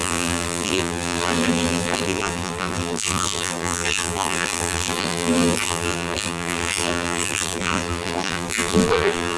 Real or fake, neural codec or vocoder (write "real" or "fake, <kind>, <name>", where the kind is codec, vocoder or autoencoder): fake, vocoder, BigVGAN v2